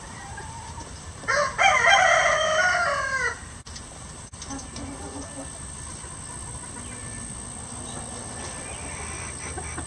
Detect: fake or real real